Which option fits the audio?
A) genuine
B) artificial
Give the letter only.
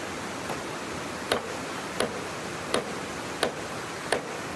A